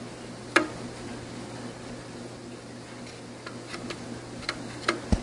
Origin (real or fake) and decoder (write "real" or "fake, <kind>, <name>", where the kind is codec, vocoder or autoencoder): real